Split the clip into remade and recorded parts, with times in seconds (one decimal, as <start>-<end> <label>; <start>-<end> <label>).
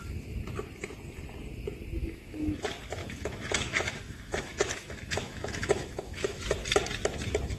0.0-2.0 recorded; 2.0-2.6 remade; 2.6-3.0 recorded; 3.0-6.4 remade; 6.4-7.6 recorded